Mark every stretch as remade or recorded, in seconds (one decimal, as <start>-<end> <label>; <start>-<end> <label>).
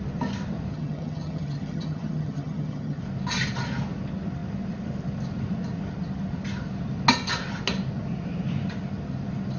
0.0-0.7 recorded; 0.7-3.0 remade; 3.0-9.6 recorded